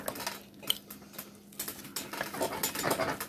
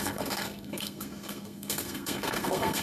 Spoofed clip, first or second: second